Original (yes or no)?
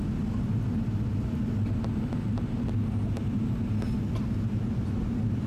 yes